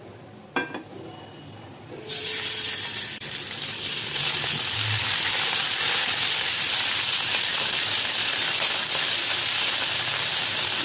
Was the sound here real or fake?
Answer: real